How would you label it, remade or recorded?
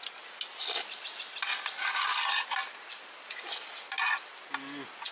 recorded